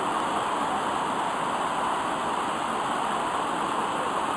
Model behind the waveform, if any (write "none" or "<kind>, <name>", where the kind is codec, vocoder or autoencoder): none